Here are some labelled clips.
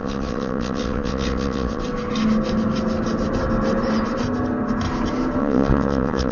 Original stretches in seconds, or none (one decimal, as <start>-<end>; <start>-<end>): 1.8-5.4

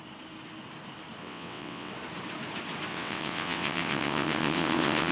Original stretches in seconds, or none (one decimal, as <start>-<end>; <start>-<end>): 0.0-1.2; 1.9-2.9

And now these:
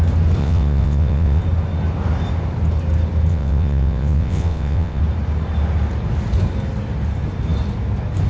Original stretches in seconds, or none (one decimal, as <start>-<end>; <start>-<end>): 0.0-0.4; 1.4-3.3; 5.0-8.3